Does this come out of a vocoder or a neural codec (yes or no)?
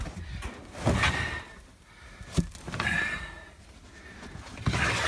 no